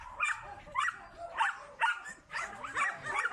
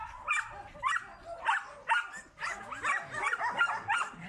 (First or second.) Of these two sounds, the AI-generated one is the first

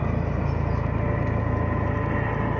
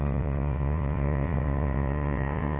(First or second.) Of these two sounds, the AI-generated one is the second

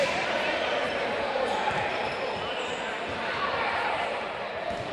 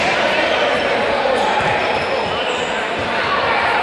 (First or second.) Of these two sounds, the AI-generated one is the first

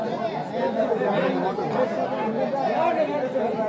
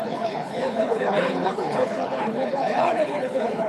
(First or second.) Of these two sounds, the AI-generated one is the second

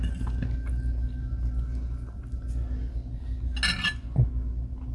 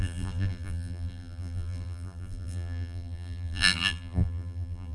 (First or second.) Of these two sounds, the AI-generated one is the second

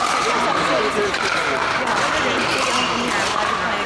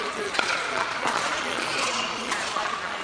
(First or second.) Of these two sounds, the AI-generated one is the second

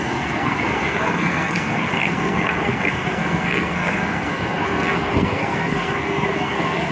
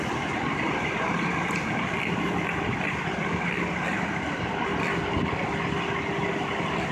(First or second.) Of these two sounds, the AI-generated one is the first